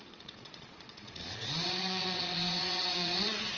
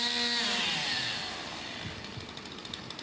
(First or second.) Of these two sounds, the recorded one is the second